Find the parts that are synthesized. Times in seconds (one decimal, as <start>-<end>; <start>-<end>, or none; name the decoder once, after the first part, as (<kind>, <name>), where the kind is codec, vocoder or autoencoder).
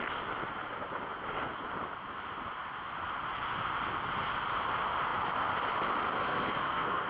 6.2-7.1 (codec, SNAC)